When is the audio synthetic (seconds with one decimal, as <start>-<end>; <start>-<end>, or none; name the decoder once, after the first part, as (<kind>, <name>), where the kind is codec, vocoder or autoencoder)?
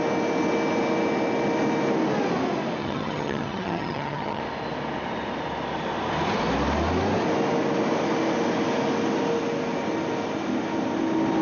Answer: 2.8-4.4 (vocoder, HiFi-GAN)